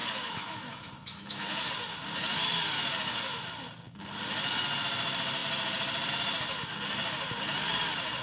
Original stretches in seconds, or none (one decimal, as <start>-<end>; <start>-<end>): 1.7-8.2